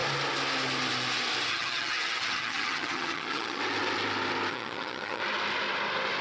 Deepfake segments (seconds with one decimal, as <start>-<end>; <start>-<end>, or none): 1.5-3.6; 4.5-5.2